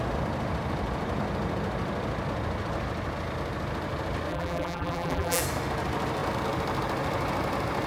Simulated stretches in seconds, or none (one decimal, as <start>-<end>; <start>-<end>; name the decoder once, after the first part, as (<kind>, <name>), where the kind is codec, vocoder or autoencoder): 4.3-5.4 (vocoder, BigVGAN v2)